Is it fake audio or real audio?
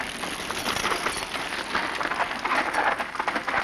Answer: real